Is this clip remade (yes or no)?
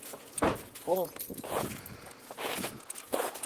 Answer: yes